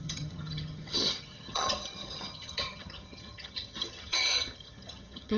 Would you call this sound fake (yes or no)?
yes